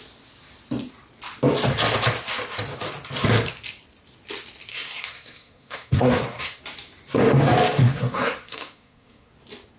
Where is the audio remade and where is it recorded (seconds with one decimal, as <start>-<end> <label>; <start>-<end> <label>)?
0.0-4.7 recorded; 4.7-6.6 remade; 6.6-7.8 recorded; 7.8-9.3 remade; 9.3-9.8 recorded